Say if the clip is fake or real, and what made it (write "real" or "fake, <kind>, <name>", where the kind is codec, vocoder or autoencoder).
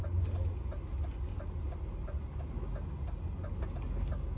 real